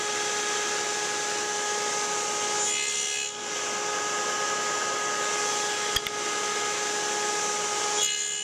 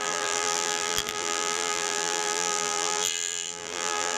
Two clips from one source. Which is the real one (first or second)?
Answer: first